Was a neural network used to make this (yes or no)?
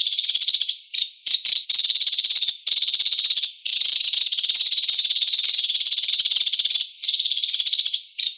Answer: yes